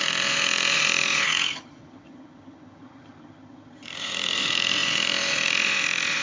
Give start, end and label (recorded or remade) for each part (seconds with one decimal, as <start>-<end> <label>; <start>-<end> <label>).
0.0-6.2 remade